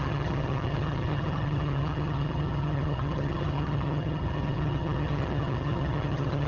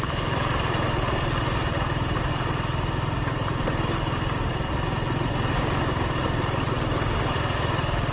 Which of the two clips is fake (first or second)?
first